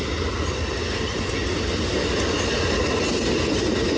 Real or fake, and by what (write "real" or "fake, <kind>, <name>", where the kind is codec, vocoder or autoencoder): real